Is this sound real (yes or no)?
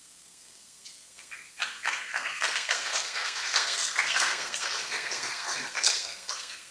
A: no